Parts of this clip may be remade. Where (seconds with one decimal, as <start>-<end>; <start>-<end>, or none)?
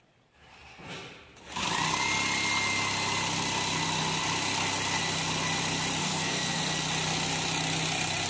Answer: 6.0-6.6